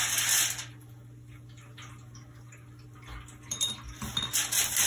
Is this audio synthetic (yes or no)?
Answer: no